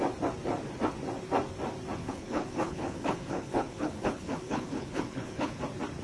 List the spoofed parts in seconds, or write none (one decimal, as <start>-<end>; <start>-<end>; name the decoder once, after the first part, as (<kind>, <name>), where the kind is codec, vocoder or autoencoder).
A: 2.0-5.6 (codec, HILCodec)